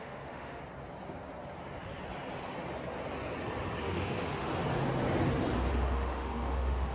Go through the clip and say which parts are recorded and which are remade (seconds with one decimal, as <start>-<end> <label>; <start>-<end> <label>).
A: 0.0-0.6 remade; 0.6-3.8 recorded; 3.8-4.5 remade; 4.5-5.7 recorded; 5.7-6.9 remade